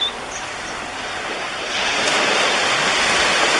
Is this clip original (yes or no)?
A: yes